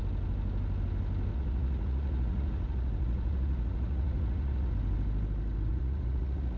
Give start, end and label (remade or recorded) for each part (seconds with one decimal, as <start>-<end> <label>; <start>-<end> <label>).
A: 0.0-1.3 recorded; 1.3-4.7 remade; 4.7-5.7 recorded; 5.7-6.6 remade